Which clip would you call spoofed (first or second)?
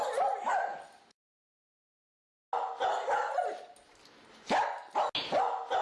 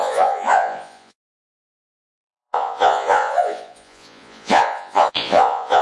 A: second